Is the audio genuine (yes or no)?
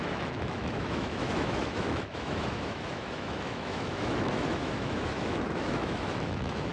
no